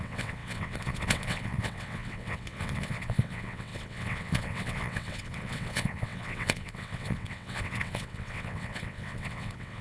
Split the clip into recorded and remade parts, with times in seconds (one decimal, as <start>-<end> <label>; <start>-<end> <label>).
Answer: 0.0-9.8 remade